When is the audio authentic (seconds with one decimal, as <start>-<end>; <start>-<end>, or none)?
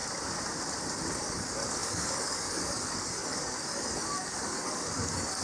0.0-1.2